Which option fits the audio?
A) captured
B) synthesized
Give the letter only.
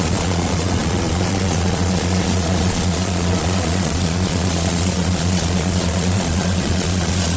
B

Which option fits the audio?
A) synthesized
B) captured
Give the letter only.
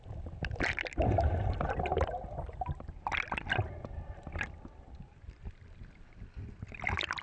B